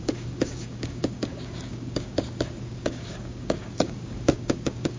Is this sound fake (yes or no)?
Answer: yes